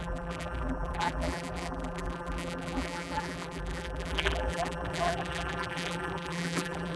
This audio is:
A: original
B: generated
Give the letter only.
B